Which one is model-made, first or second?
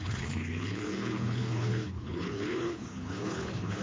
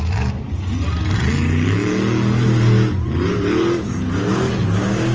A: first